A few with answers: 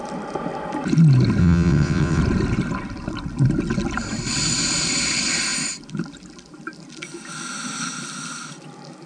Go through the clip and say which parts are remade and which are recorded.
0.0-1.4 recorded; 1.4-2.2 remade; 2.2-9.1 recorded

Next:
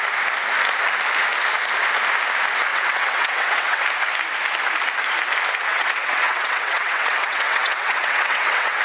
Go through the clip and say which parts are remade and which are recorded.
0.0-2.7 recorded; 2.7-3.8 remade; 3.8-5.7 recorded; 5.7-8.8 remade

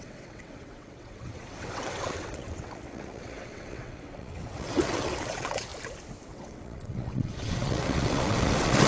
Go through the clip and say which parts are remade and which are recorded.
0.0-5.7 remade; 5.7-6.3 recorded; 6.3-8.9 remade

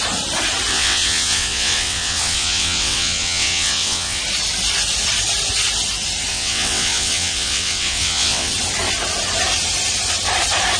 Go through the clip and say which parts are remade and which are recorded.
0.0-0.7 recorded; 0.7-4.2 remade; 4.2-6.3 recorded; 6.3-8.5 remade; 8.5-10.8 recorded